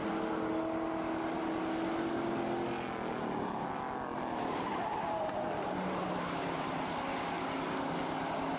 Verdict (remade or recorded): recorded